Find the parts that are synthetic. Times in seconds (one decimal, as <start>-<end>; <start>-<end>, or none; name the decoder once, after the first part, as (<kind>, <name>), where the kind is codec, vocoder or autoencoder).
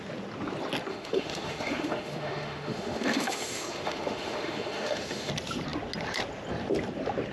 0.9-5.3 (autoencoder, DAC-VAE)